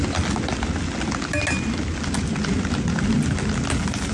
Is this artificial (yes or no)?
no